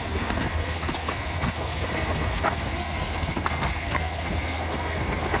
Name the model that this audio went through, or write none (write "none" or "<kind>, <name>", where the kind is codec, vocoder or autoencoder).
codec, SNAC